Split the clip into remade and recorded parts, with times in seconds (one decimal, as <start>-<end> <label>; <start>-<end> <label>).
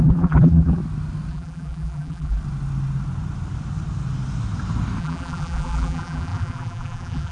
0.0-0.8 remade; 0.8-1.3 recorded; 1.3-2.4 remade; 2.4-5.0 recorded; 5.0-7.3 remade